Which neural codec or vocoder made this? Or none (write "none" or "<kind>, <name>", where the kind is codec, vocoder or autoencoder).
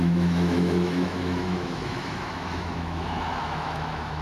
autoencoder, DAC-VAE